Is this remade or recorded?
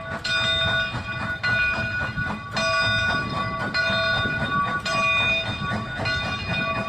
recorded